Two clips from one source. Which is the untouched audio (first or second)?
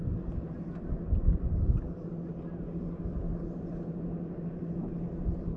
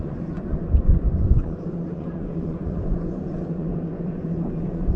first